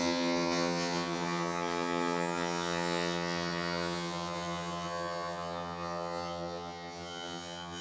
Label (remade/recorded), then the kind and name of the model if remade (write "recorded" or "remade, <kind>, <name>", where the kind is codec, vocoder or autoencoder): remade, vocoder, HiFi-GAN